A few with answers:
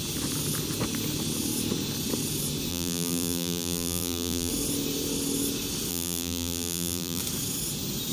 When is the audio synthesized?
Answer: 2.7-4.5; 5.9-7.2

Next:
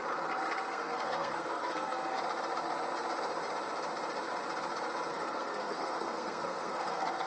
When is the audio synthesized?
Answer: 0.7-2.2; 5.1-7.3

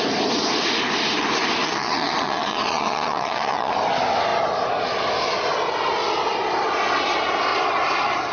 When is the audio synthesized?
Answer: 1.6-3.7